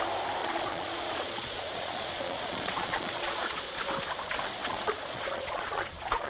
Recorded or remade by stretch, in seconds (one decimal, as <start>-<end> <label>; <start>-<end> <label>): 0.0-0.4 recorded; 0.4-3.8 remade; 3.8-4.6 recorded; 4.6-6.3 remade

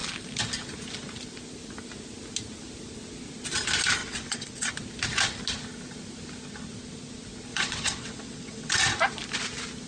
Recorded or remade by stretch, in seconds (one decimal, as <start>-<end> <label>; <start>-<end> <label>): 0.0-4.0 recorded; 4.0-4.7 remade; 4.7-7.5 recorded; 7.5-8.7 remade; 8.7-9.9 recorded

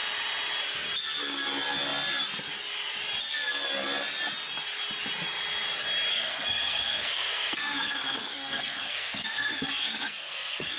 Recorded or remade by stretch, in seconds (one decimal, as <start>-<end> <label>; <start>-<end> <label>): 0.0-6.1 recorded; 6.1-10.8 remade